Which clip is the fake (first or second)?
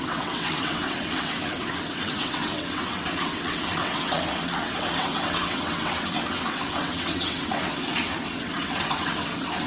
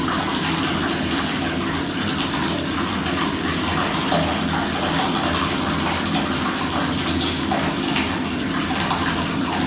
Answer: first